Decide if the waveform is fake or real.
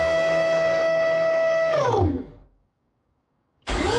fake